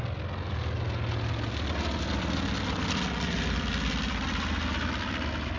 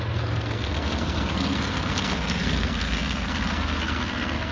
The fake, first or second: second